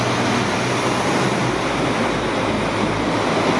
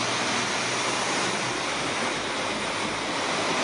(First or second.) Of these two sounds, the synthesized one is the second